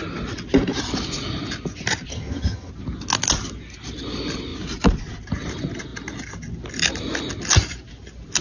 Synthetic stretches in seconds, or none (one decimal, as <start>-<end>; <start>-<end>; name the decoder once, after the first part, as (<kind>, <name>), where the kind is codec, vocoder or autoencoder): 2.1-2.7 (vocoder, HiFi-GAN)